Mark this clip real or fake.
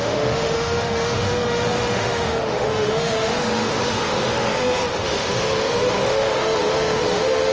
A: fake